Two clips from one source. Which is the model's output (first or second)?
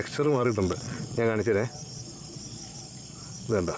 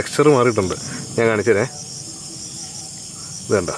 first